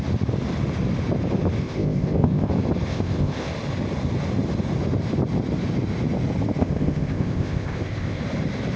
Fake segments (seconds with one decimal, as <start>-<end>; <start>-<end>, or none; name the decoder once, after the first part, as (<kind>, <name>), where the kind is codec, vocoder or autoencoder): 1.6-2.5 (codec, ZipCodec); 2.9-3.5; 6.6-8.2